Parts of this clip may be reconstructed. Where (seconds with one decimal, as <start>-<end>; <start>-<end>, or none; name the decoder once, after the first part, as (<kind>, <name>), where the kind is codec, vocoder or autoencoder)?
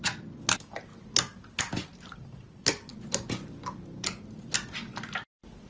none